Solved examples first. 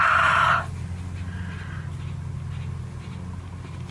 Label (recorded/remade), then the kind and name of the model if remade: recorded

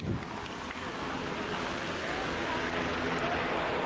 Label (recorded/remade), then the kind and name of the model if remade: recorded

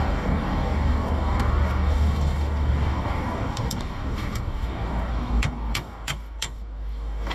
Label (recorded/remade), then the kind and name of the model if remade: remade, codec, DAC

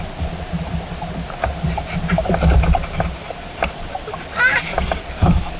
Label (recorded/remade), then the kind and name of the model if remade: recorded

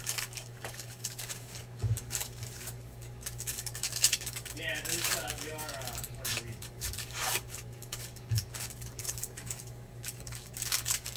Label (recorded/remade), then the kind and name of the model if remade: remade, codec, DAC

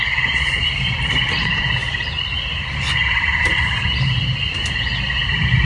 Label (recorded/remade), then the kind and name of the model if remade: recorded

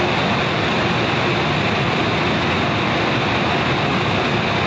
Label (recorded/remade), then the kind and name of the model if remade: recorded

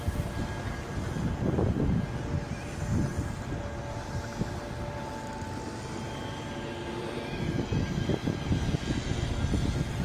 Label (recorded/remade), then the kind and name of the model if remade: recorded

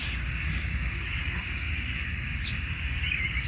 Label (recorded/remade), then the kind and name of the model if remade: remade, codec, DAC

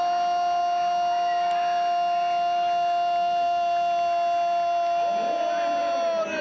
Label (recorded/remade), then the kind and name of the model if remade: recorded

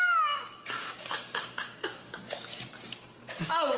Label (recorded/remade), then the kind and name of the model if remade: remade, codec, DAC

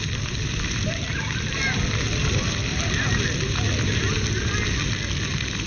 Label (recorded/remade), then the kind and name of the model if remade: recorded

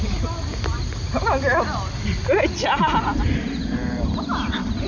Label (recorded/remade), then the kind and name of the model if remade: recorded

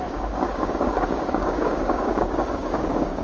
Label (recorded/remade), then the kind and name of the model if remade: remade, codec, DAC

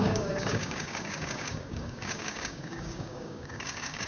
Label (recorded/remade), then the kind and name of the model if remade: remade, codec, DAC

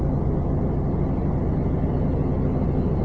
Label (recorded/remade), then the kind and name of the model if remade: recorded